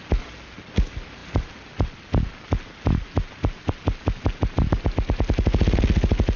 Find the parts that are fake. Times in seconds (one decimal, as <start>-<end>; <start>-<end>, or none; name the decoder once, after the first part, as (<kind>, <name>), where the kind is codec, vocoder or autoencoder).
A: none